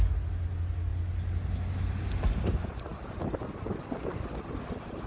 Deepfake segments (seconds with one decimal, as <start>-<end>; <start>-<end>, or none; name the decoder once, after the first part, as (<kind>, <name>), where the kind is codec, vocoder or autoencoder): none